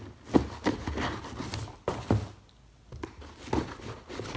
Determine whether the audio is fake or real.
real